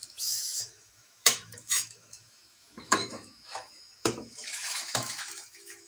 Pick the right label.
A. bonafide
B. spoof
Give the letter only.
B